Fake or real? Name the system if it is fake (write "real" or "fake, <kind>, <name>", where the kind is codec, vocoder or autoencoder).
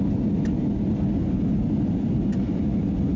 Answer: real